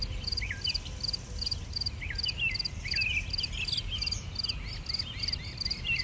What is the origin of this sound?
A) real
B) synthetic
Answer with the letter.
A